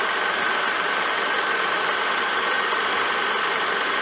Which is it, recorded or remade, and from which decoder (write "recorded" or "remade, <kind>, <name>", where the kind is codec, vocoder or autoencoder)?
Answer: recorded